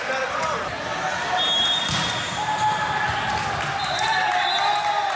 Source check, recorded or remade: recorded